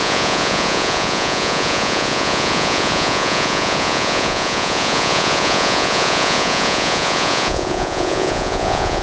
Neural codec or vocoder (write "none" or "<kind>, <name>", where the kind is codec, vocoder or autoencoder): vocoder, Vocos